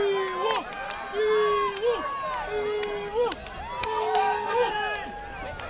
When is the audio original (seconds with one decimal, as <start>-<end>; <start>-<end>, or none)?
0.0-3.8; 4.7-5.7